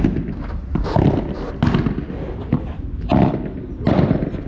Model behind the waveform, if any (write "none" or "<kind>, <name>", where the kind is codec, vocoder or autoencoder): none